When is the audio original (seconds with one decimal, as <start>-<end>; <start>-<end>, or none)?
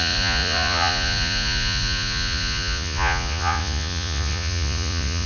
none